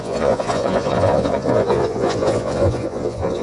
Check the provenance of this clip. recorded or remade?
remade